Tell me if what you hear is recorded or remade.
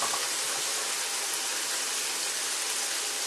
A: recorded